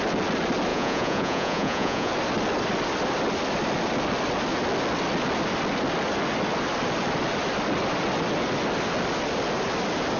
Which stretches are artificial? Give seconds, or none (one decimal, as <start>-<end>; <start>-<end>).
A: 0.7-2.1

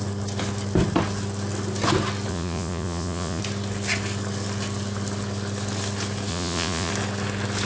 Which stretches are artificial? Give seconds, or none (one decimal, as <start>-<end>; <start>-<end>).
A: 2.3-3.4; 6.3-6.9